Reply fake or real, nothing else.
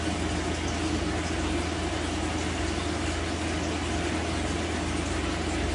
real